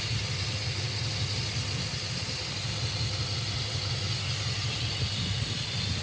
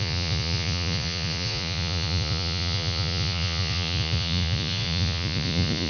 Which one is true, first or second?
first